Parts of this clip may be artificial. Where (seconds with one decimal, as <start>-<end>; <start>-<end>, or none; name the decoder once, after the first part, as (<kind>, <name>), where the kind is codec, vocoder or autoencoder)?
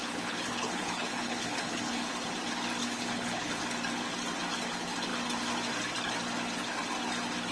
0.0-2.1 (codec, HILCodec); 2.8-3.6